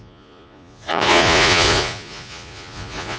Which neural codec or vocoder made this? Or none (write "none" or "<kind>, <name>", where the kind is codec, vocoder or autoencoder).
vocoder, Vocos